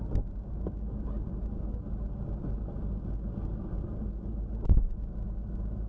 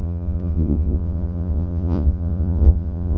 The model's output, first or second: second